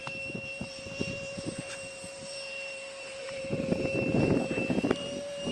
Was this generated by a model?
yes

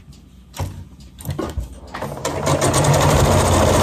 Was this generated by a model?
no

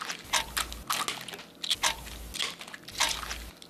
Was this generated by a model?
no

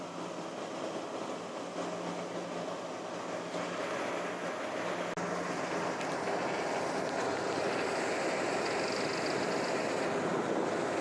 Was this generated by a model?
no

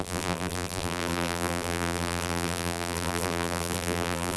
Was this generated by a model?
yes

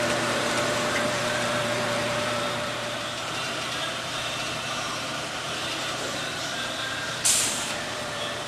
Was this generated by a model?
yes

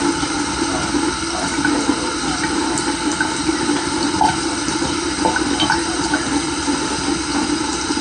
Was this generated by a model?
no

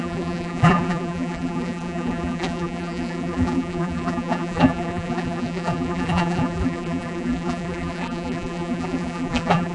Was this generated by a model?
yes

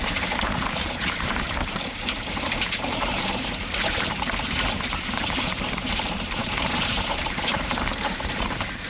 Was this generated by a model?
yes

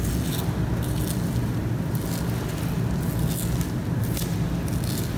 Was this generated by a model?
no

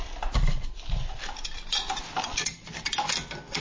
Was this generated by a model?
yes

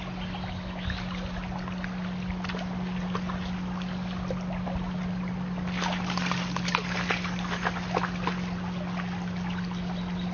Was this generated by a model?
no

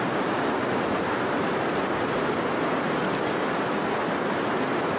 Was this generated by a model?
no